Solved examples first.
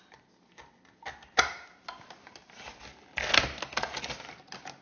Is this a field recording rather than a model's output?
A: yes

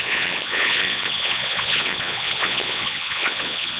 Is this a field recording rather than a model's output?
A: no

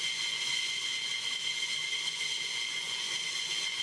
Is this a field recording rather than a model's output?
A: no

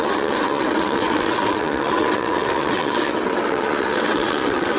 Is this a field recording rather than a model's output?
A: no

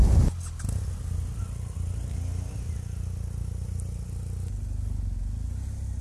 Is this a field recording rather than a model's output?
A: yes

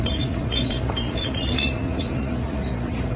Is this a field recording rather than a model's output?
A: no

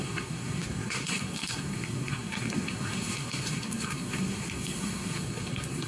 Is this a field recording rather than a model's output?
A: no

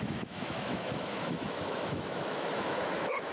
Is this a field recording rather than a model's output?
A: no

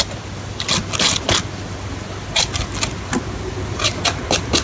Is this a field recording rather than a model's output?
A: yes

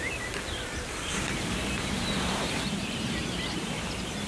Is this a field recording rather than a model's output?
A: no